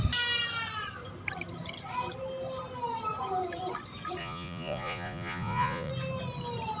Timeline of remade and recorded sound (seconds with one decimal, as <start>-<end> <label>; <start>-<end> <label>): 0.0-4.2 recorded; 4.2-5.9 remade; 5.9-6.8 recorded

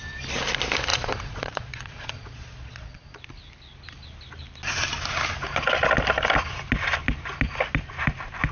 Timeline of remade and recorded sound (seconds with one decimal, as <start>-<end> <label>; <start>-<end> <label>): 0.0-0.9 recorded; 0.9-3.2 remade; 3.2-8.5 recorded

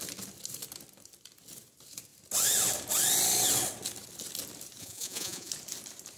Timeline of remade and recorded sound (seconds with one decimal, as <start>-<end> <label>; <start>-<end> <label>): 0.0-4.8 recorded; 4.8-5.5 remade; 5.5-6.2 recorded

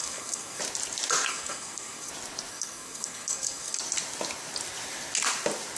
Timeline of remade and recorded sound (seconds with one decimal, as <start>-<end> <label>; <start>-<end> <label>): 0.0-0.6 remade; 0.6-1.3 recorded; 1.3-2.1 remade; 2.1-2.5 recorded; 2.5-3.8 remade; 3.8-5.8 recorded

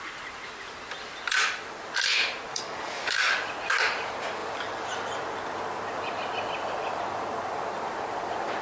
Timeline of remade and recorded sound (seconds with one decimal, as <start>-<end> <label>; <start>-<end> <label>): 0.0-2.5 recorded; 2.5-3.3 remade; 3.3-8.6 recorded

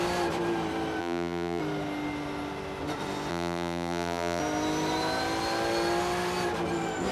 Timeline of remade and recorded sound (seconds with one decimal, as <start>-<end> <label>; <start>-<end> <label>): 0.0-1.0 recorded; 1.0-1.6 remade; 1.6-3.3 recorded; 3.3-4.4 remade; 4.4-7.1 recorded